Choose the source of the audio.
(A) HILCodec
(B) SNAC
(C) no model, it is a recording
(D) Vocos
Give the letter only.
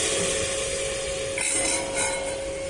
C